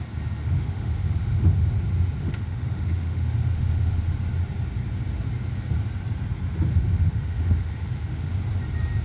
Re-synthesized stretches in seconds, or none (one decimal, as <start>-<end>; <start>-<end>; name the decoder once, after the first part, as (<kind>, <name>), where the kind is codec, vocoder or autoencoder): 0.4-1.7 (autoencoder, DAC-VAE); 2.2-4.0; 6.7-8.3